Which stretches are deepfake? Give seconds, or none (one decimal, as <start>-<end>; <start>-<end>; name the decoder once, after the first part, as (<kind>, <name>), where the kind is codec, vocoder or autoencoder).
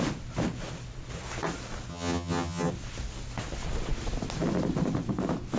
1.9-2.7 (vocoder, HiFi-GAN)